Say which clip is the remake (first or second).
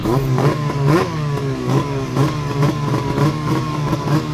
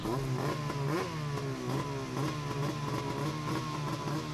first